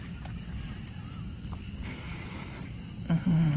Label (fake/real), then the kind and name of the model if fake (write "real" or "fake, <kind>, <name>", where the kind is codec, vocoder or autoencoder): real